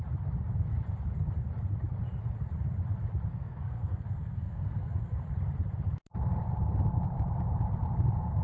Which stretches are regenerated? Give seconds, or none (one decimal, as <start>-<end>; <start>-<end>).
3.3-5.2